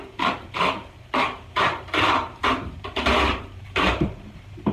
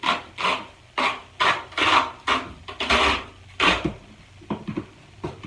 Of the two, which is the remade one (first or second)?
first